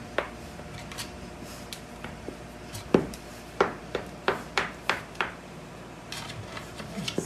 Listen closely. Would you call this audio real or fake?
fake